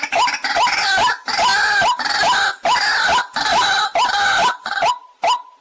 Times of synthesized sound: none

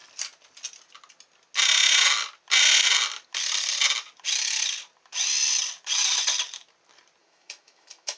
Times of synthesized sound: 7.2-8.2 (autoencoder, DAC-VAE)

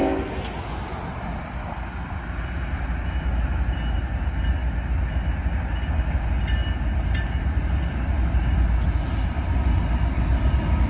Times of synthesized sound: none

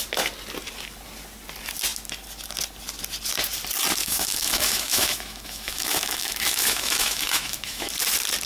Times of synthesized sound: 4.0-7.9 (autoencoder, DAC-VAE)

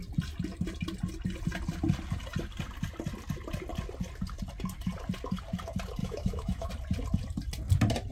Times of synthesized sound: 6.0-6.7 (autoencoder, DAC-VAE)

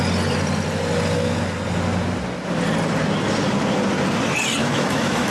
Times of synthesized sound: 4.6-5.3 (autoencoder, DAC-VAE)

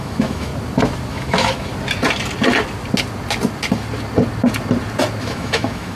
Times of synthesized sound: 0.0-0.5 (autoencoder, DAC-VAE); 1.1-1.7; 5.2-6.0